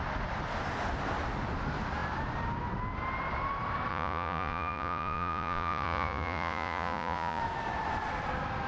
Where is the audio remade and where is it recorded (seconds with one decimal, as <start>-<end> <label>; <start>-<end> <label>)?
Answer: 0.0-3.9 recorded; 3.9-7.4 remade; 7.4-8.7 recorded